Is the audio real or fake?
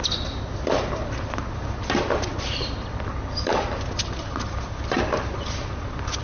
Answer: real